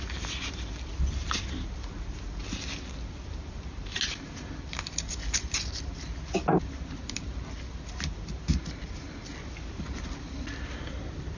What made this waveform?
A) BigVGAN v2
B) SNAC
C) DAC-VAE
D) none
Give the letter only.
D